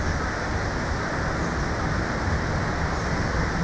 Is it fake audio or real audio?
real